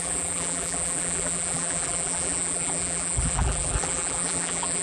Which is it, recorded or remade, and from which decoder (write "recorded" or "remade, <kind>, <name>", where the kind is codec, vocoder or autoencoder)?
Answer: remade, vocoder, BigVGAN v2